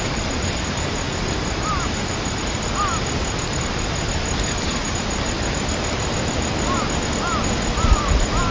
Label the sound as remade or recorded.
recorded